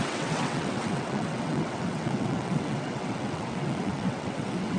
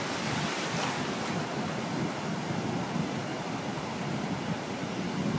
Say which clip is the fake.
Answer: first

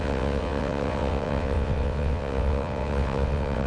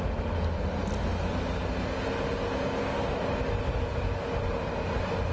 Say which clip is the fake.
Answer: first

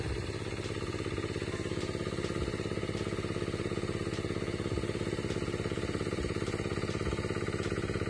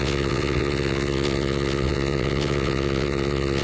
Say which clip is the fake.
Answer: second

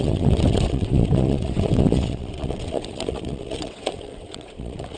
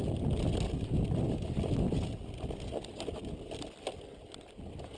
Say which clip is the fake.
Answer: first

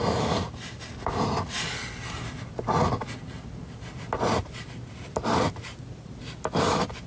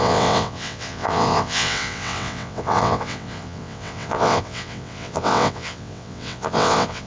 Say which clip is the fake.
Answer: second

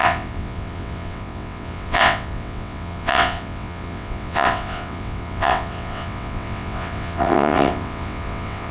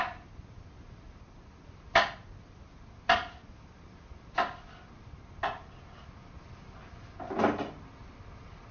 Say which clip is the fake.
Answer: first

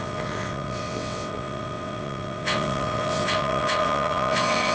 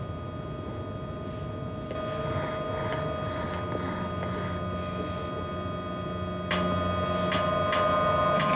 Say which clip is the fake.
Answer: first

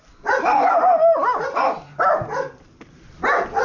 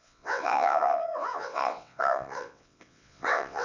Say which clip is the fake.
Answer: second